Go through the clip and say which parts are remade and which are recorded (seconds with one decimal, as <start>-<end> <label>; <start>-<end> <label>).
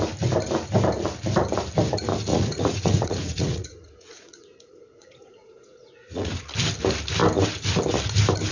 0.0-2.3 recorded; 2.3-6.4 remade; 6.4-8.5 recorded